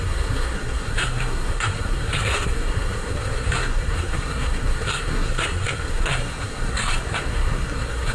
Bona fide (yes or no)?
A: no